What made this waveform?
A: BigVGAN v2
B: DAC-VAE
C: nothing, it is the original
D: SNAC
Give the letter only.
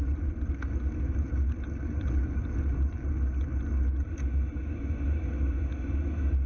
C